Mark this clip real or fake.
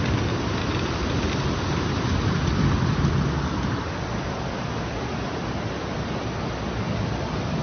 real